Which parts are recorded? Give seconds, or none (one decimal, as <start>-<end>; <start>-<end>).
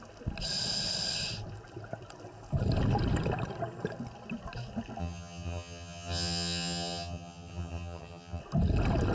0.0-5.0; 8.4-9.1